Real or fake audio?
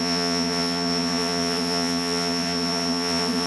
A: fake